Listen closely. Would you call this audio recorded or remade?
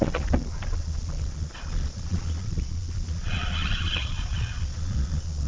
remade